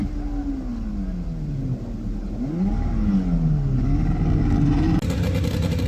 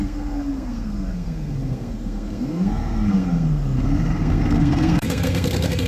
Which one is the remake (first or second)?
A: second